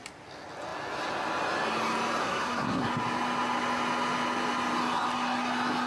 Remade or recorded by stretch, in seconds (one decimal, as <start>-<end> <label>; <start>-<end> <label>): 0.0-2.2 recorded; 2.2-2.9 remade; 2.9-5.9 recorded